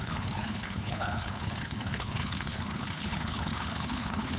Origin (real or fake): fake